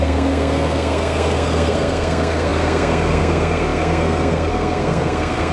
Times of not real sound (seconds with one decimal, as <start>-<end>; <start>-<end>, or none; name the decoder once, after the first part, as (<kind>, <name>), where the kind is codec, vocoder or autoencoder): 0.0-5.5 (codec, SNAC)